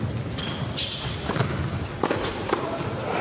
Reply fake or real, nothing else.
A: real